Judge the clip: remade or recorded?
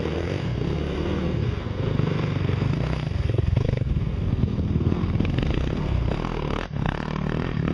remade